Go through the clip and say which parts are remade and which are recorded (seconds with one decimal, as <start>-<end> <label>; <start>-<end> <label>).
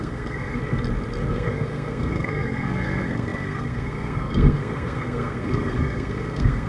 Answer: 0.0-0.6 remade; 0.6-1.3 recorded; 1.3-6.7 remade